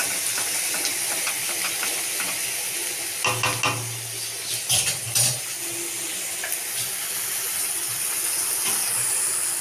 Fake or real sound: real